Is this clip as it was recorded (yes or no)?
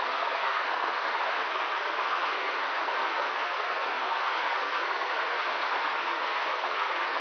no